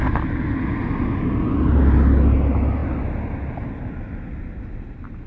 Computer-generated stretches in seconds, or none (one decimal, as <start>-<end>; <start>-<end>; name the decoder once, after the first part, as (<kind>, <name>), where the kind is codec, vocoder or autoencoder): none